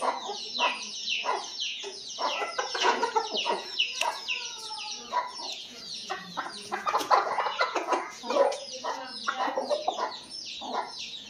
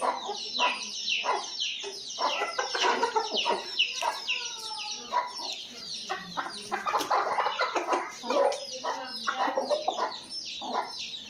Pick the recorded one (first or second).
second